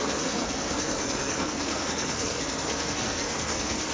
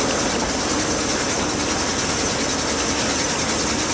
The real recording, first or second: second